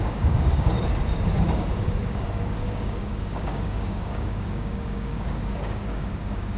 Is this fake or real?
fake